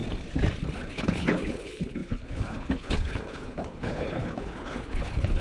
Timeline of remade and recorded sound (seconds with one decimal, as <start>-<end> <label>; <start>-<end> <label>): 0.0-0.9 recorded; 0.9-5.4 remade